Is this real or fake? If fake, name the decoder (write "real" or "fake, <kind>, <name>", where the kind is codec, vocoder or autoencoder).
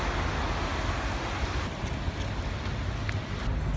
real